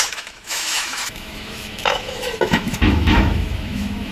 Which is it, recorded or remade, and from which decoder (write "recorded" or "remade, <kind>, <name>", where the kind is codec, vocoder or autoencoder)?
remade, autoencoder, DAC-VAE